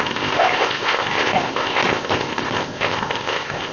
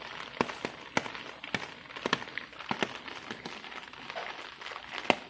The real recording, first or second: second